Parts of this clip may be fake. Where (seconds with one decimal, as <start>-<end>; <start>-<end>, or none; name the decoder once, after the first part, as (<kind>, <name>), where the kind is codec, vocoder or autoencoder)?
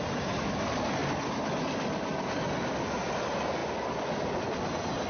none